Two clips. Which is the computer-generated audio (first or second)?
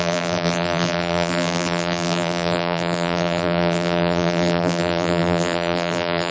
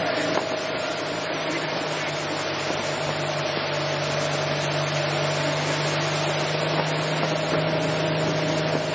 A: first